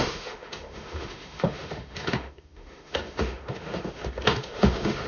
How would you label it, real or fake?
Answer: fake